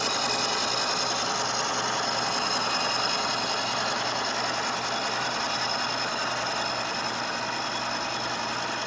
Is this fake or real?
real